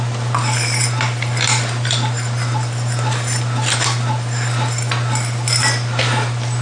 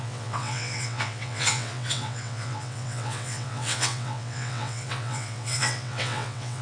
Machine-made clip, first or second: second